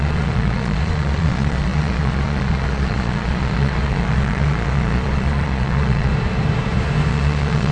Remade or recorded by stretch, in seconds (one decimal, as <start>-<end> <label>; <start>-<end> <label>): 0.0-6.1 remade; 6.1-7.1 recorded; 7.1-7.7 remade